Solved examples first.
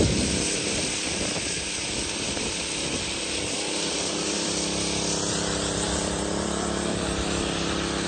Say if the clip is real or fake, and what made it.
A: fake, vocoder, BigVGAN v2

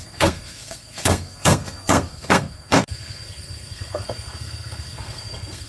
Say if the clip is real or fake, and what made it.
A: fake, codec, SNAC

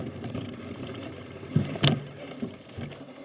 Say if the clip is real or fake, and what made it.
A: real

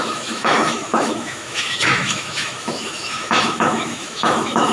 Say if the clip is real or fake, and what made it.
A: fake, autoencoder, DAC-VAE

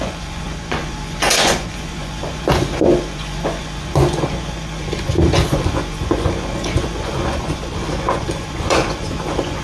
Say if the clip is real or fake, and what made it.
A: fake, vocoder, Vocos